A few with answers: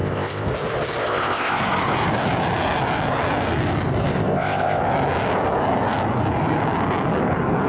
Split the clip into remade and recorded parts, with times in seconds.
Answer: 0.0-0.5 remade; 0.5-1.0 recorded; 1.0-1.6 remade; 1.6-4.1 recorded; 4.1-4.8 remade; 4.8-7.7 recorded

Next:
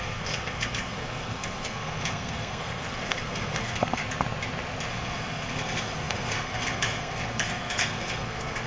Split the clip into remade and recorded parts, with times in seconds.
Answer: 0.0-4.0 remade; 4.0-4.9 recorded; 4.9-8.7 remade

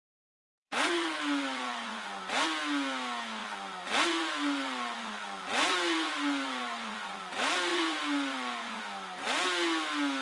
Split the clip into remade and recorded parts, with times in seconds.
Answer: 0.0-0.5 recorded; 0.5-2.2 remade; 2.2-3.4 recorded; 3.4-7.3 remade; 7.3-7.7 recorded; 7.7-8.8 remade; 8.8-10.2 recorded

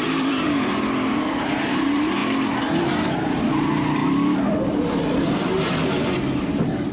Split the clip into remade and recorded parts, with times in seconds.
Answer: 0.0-6.9 remade

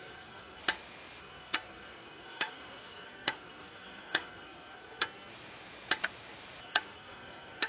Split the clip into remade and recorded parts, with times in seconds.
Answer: 0.0-0.6 remade; 0.6-1.2 recorded; 1.2-5.3 remade; 5.3-6.6 recorded; 6.6-7.7 remade